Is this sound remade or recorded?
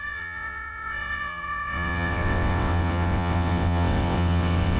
remade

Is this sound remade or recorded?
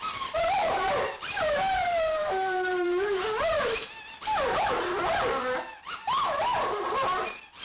remade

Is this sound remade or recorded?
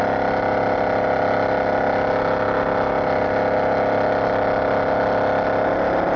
recorded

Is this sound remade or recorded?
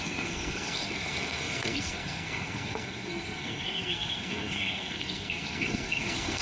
remade